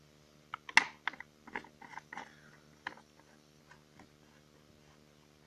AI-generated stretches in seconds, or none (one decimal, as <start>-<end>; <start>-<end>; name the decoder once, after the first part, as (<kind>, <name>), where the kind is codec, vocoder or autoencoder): 1.9-3.6 (vocoder, BigVGAN v2)